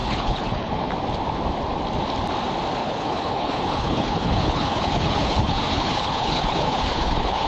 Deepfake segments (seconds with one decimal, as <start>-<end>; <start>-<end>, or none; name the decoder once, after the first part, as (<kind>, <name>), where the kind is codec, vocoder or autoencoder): 0.0-0.9 (codec, HILCodec); 2.8-7.5